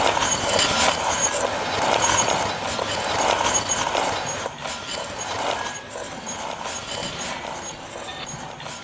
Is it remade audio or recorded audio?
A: recorded